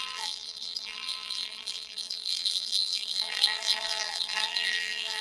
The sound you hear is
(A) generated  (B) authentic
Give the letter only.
A